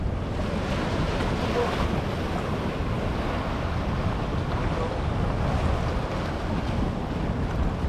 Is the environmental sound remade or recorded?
recorded